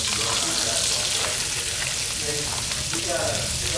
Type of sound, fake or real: real